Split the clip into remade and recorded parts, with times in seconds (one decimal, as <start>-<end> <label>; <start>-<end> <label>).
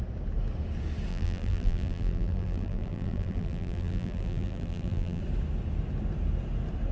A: 0.0-1.1 recorded; 1.1-5.2 remade; 5.2-6.9 recorded